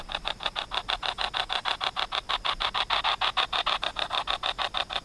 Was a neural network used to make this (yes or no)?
no